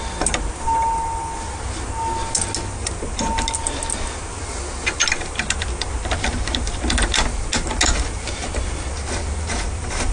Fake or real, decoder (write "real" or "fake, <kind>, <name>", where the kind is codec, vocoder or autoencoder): real